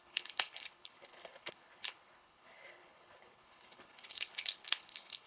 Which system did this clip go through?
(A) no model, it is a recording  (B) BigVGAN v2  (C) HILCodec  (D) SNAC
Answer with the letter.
C